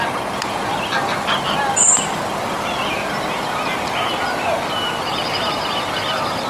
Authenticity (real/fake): real